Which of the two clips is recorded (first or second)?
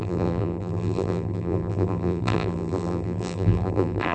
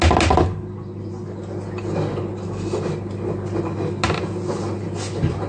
second